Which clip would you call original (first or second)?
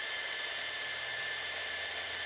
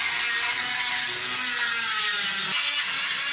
second